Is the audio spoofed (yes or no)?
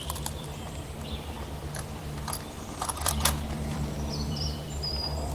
yes